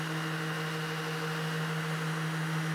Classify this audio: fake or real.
real